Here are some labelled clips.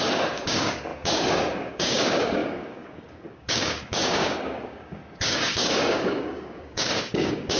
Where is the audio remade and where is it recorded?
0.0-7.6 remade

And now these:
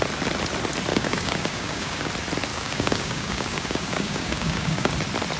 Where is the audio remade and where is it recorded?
0.0-0.9 recorded; 0.9-2.1 remade; 2.1-2.5 recorded; 2.5-4.9 remade; 4.9-5.4 recorded

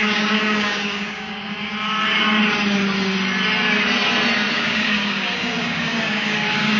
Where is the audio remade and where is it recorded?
0.0-1.7 remade; 1.7-4.5 recorded; 4.5-6.8 remade